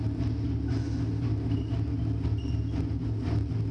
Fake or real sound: real